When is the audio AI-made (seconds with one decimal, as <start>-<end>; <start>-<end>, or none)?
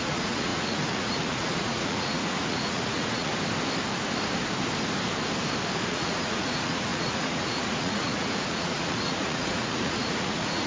0.0-3.3; 5.9-10.7